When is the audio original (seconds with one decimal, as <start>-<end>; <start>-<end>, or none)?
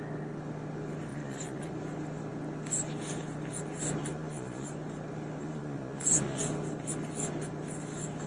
0.0-1.1; 1.7-4.0; 4.7-5.4; 6.4-8.3